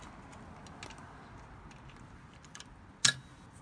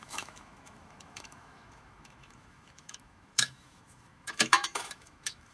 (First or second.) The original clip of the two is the first